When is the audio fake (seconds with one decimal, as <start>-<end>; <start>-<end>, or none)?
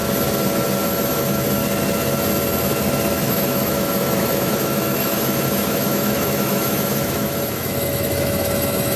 0.9-1.6; 3.3-9.0